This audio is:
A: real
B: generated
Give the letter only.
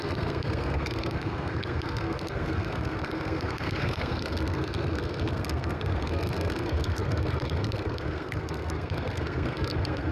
B